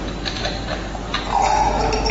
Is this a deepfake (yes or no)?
no